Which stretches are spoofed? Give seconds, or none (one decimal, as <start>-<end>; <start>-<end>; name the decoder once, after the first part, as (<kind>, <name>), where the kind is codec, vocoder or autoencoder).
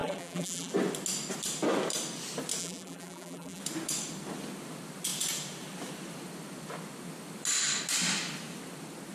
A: 0.0-0.7 (vocoder, BigVGAN v2); 2.6-3.6